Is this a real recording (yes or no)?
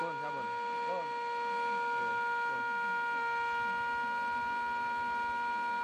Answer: yes